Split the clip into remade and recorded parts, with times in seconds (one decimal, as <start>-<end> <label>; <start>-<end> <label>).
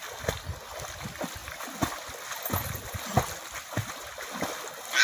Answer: 0.0-5.0 recorded